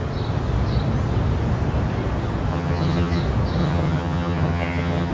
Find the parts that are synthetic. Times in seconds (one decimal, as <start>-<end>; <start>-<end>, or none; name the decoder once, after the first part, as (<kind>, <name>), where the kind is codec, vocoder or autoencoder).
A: 2.5-3.2 (vocoder, HiFi-GAN); 3.6-5.1